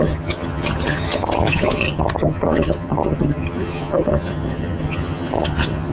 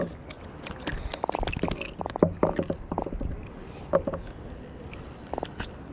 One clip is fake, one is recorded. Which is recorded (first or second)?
second